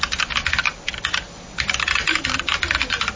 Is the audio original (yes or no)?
yes